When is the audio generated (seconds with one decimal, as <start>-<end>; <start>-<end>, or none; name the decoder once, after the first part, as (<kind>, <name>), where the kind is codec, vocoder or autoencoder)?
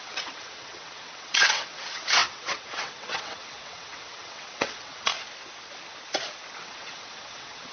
0.0-5.1 (vocoder, WaveNeXt); 6.6-7.7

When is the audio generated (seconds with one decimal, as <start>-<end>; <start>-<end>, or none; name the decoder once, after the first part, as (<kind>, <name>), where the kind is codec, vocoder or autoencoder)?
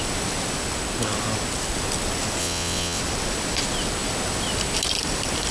2.4-3.0 (vocoder, WaveNeXt)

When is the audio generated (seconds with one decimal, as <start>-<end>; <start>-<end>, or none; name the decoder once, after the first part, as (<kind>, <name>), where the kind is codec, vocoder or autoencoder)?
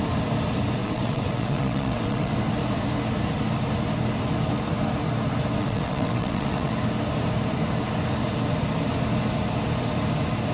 0.8-2.3 (vocoder, WaveNeXt); 5.6-6.7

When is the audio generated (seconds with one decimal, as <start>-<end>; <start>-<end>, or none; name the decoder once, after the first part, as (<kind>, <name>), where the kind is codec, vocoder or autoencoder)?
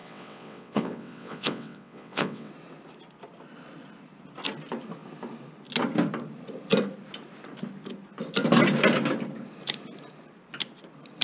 0.0-2.5 (vocoder, WaveNeXt)